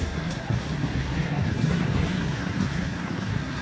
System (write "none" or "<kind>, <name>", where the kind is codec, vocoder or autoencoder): codec, SNAC